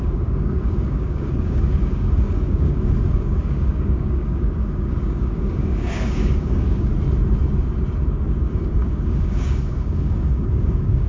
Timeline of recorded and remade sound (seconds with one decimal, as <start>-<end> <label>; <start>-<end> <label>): 0.0-6.9 remade; 6.9-8.4 recorded; 8.4-11.1 remade